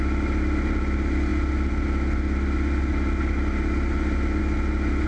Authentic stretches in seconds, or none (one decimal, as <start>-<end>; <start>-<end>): 0.0-5.1